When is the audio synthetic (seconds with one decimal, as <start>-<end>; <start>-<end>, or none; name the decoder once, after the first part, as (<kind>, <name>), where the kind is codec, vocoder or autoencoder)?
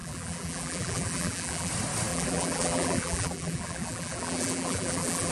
0.0-1.7 (vocoder, BigVGAN v2); 2.1-5.3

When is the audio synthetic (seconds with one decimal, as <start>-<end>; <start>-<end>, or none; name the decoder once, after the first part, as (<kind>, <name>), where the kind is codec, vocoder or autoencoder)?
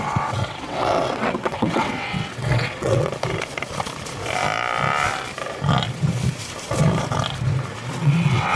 0.0-3.1 (vocoder, WaveNeXt); 7.9-8.6